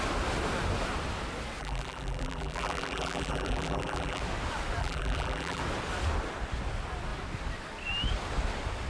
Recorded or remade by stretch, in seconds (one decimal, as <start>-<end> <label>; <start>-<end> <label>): 0.0-1.6 recorded; 1.6-4.2 remade; 4.2-4.8 recorded; 4.8-5.6 remade; 5.6-8.9 recorded